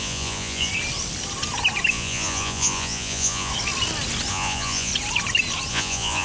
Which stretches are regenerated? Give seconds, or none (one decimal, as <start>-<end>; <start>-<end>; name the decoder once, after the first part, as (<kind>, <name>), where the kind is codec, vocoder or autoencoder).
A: 0.0-0.7 (vocoder, Vocos); 1.9-3.5; 4.3-4.9; 5.7-6.2